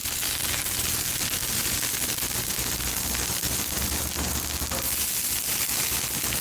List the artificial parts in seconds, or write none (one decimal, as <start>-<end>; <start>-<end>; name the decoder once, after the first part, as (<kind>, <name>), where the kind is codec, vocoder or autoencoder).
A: none